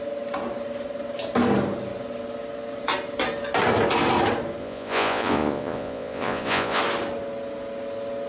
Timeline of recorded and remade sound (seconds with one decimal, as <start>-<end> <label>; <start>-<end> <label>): 0.0-4.6 recorded; 4.6-6.8 remade; 6.8-8.3 recorded